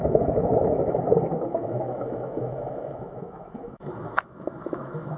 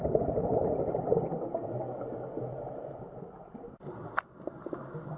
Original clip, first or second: second